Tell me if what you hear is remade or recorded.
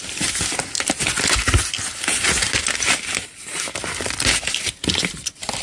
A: recorded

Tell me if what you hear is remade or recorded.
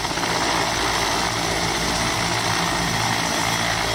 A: recorded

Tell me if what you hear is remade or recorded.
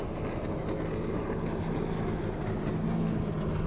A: recorded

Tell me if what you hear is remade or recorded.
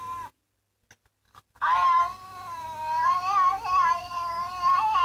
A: recorded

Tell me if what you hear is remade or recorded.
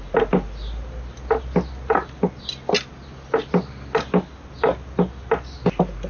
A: recorded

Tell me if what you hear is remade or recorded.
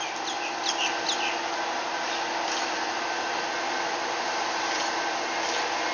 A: recorded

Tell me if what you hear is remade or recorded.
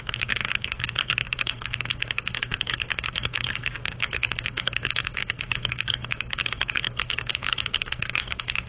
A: remade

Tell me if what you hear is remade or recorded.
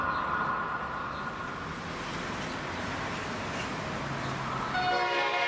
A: recorded